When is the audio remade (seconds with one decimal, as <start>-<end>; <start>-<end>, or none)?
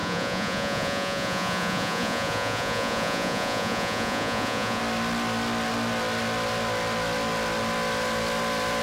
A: 0.0-4.8